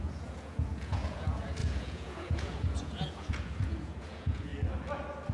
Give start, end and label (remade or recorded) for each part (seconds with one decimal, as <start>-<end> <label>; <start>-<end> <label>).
0.0-4.5 remade; 4.5-5.3 recorded